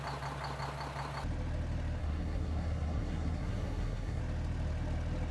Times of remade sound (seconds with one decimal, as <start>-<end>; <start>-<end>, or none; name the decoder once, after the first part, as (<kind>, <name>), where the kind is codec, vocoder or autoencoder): 2.0-4.2 (codec, SNAC)